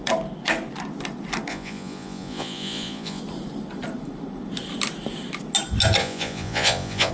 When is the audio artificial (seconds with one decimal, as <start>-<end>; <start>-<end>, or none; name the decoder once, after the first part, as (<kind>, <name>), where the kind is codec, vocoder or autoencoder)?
1.5-3.2 (vocoder, Vocos); 6.0-7.1